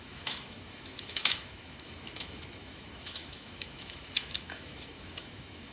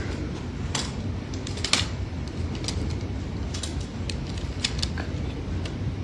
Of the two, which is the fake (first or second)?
first